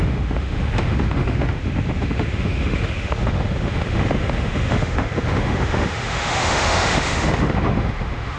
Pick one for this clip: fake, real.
fake